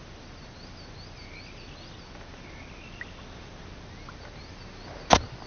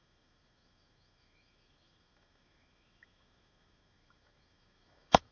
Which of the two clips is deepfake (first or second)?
second